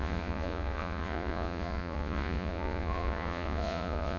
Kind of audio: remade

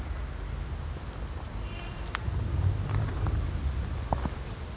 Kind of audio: recorded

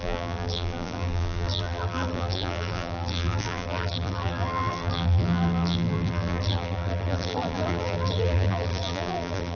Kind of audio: remade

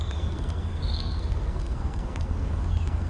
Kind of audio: remade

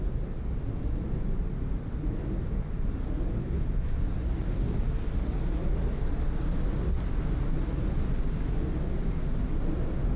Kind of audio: recorded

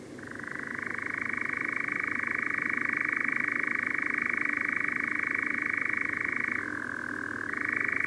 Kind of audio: recorded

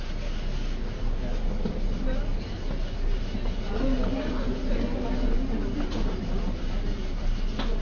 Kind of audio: recorded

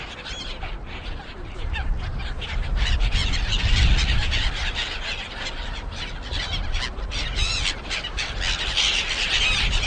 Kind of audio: recorded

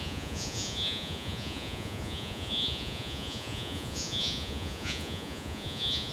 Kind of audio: remade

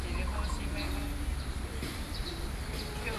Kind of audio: recorded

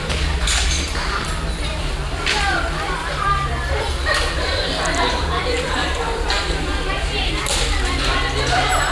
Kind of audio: remade